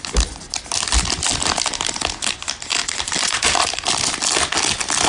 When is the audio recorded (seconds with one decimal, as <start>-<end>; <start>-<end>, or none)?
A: 0.0-2.8; 4.0-5.1